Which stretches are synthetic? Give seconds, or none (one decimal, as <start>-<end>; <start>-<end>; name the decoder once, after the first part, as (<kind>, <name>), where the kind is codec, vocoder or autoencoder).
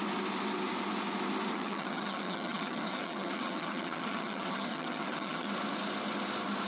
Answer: 1.5-5.5 (vocoder, HiFi-GAN)